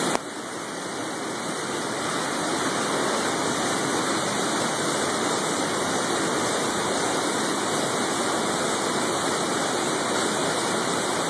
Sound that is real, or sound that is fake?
real